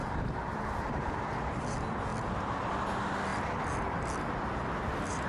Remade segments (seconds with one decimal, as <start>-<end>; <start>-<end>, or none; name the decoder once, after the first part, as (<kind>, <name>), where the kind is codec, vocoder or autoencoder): 0.0-1.5 (vocoder, BigVGAN v2)